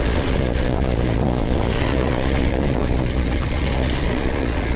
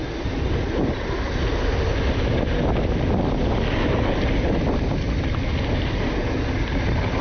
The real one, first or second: second